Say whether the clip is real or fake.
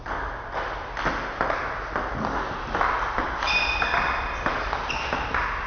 real